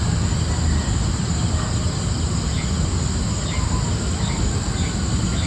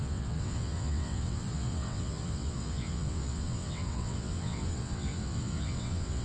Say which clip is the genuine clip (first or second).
first